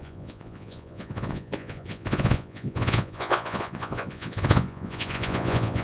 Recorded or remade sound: remade